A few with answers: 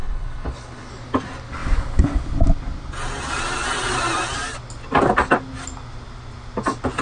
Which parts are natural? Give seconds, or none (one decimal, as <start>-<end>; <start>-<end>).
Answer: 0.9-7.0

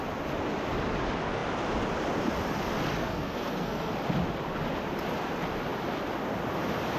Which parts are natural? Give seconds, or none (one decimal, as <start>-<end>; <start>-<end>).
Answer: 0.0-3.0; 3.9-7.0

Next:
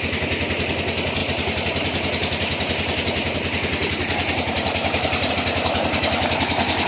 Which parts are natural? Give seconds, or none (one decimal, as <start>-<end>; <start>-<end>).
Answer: 0.0-1.2; 5.3-6.9